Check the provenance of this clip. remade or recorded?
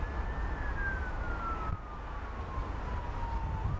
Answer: recorded